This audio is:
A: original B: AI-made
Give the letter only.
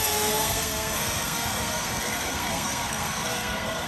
B